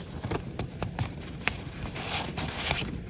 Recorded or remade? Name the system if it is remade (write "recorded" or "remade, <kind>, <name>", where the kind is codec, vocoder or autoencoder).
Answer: recorded